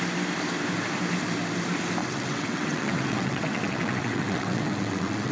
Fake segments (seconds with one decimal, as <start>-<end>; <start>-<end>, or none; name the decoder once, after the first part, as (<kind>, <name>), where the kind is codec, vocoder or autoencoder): 2.0-5.3 (vocoder, WaveNeXt)